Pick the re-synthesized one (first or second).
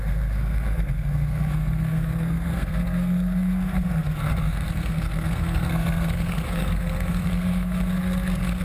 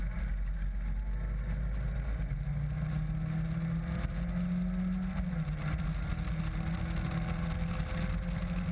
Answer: first